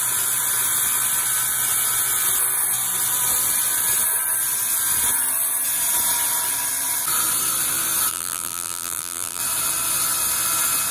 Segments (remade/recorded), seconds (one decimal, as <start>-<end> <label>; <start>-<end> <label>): 0.0-8.1 recorded; 8.1-9.4 remade; 9.4-10.9 recorded